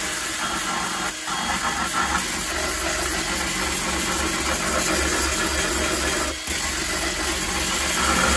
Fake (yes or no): no